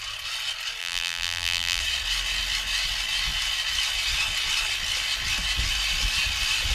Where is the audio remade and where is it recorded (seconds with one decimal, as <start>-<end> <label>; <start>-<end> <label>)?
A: 0.0-0.8 recorded; 0.8-1.8 remade; 1.8-6.7 recorded